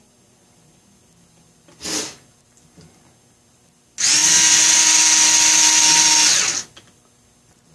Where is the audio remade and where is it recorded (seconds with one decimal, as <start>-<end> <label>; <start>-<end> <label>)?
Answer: 0.0-7.7 recorded